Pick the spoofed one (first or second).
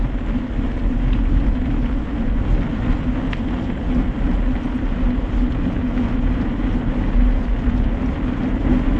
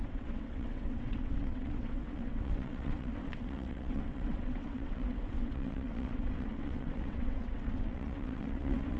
second